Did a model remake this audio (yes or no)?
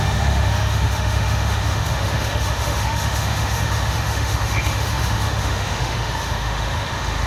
yes